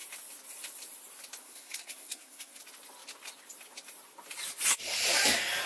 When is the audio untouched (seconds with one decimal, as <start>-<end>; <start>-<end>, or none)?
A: 0.0-1.4; 2.6-5.7